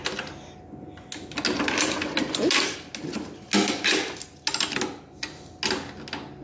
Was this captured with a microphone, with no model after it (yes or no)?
yes